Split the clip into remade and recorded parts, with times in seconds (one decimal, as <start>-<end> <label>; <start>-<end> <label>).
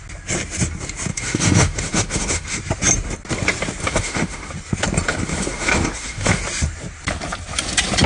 0.0-1.1 recorded; 1.1-2.6 remade; 2.6-3.8 recorded; 3.8-4.5 remade; 4.5-5.1 recorded; 5.1-6.4 remade; 6.4-8.1 recorded